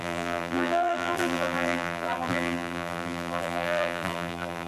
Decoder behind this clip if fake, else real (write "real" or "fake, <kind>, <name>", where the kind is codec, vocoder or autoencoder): fake, vocoder, BigVGAN v2